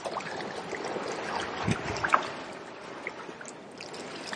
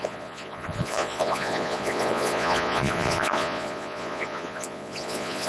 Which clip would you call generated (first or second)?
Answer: second